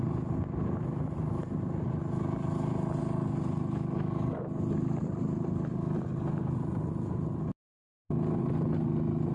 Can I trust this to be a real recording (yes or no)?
yes